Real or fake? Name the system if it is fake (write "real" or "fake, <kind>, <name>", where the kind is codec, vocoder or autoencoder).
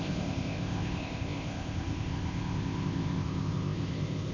fake, codec, ZipCodec